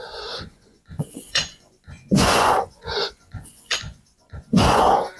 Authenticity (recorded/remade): remade